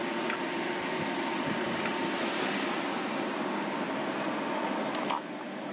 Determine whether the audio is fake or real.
real